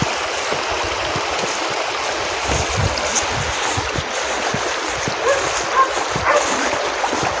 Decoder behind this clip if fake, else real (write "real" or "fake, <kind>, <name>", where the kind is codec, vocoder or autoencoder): real